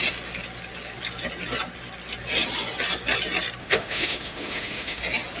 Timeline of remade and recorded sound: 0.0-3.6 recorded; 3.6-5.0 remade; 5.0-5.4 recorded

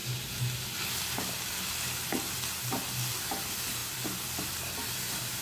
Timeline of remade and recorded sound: 0.0-5.4 recorded

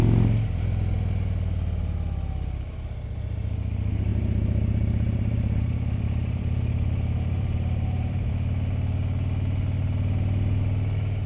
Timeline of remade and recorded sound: 0.0-4.1 recorded; 4.1-8.3 remade; 8.3-11.3 recorded

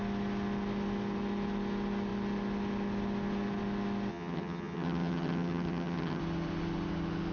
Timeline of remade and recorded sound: 0.0-4.1 recorded; 4.1-6.2 remade; 6.2-7.3 recorded